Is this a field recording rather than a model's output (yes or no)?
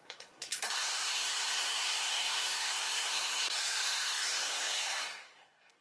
no